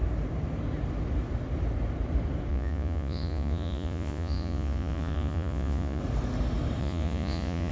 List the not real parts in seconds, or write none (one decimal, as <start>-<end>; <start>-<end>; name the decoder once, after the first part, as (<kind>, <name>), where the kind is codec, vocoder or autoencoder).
2.5-6.0 (vocoder, Vocos); 6.8-7.7